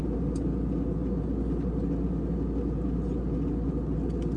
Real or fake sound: real